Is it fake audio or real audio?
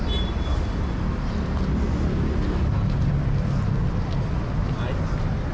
real